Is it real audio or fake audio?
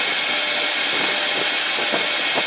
real